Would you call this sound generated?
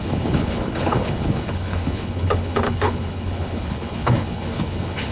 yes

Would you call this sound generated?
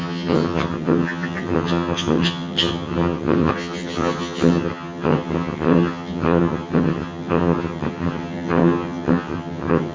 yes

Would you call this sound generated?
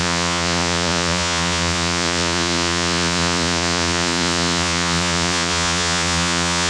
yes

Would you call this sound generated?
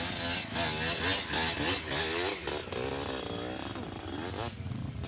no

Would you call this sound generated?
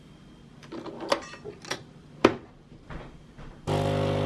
no